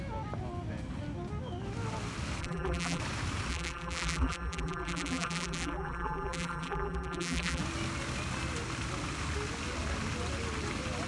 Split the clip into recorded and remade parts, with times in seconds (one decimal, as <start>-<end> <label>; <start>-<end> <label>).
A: 0.0-2.4 recorded; 2.4-3.0 remade; 3.0-3.5 recorded; 3.5-7.6 remade; 7.6-11.1 recorded